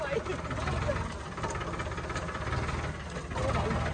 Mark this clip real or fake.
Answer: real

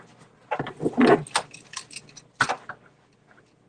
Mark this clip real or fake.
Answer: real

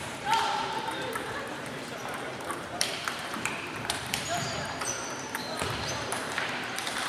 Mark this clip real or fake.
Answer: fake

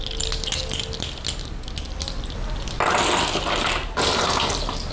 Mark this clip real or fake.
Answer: real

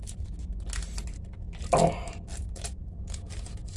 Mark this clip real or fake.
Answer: real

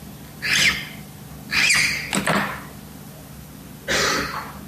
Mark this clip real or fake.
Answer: real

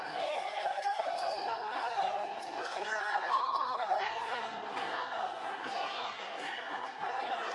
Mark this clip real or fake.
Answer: fake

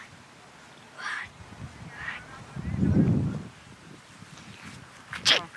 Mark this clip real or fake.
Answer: real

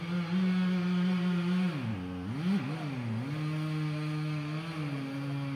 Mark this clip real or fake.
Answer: real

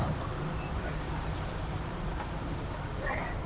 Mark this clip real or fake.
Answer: fake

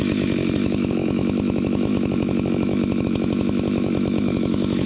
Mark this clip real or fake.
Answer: fake